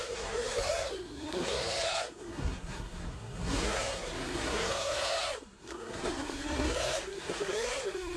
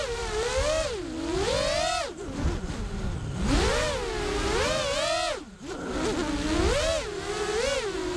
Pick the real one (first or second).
second